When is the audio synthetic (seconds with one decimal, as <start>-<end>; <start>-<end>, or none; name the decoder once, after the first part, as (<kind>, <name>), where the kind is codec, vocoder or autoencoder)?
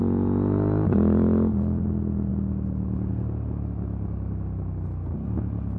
none